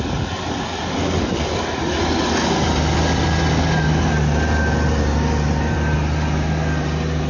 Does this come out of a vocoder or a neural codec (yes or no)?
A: no